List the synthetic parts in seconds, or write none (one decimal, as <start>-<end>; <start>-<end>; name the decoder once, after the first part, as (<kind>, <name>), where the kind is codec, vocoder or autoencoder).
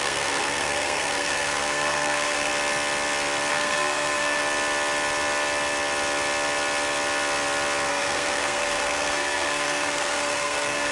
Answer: 0.0-2.5 (codec, SNAC); 3.5-4.4; 7.9-10.9